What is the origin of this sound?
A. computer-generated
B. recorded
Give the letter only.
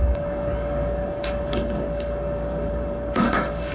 A